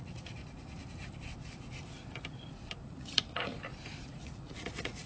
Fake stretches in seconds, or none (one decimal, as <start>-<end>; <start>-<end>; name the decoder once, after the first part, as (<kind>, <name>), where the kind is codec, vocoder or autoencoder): 0.0-0.4 (vocoder, Vocos); 2.9-3.5; 4.1-5.1